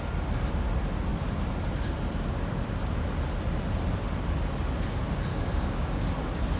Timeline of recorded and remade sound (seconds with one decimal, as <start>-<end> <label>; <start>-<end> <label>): 0.0-5.3 recorded; 5.3-6.1 remade; 6.1-6.6 recorded